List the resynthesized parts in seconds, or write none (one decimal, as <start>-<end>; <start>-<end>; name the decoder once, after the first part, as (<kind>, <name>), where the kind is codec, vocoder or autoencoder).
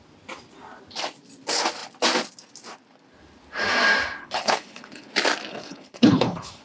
4.2-5.1 (codec, HILCodec); 5.5-6.6